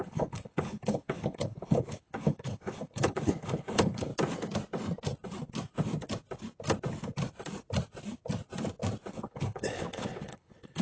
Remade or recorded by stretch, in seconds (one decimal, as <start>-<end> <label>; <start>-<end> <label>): 0.0-4.1 remade; 4.1-9.1 recorded; 9.1-10.8 remade